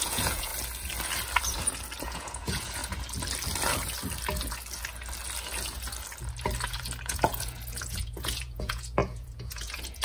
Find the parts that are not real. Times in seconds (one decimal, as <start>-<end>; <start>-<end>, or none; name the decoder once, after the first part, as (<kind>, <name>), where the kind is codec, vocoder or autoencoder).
0.0-0.5 (vocoder, Vocos); 2.0-2.8; 7.0-10.0